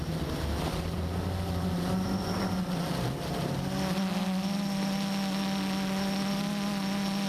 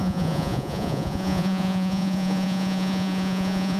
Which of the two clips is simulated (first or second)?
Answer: second